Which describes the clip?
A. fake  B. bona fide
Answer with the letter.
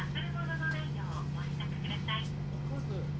B